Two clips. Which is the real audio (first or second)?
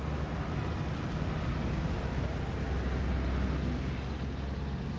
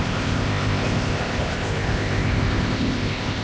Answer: first